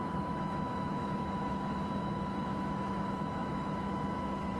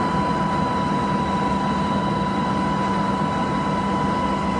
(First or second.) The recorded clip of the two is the second